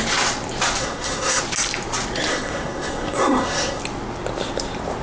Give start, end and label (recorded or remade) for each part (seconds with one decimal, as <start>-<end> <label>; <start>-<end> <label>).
0.0-0.8 recorded; 0.8-1.4 remade; 1.4-2.3 recorded; 2.3-3.8 remade; 3.8-5.0 recorded